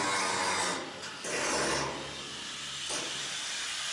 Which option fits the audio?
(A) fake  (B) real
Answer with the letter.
B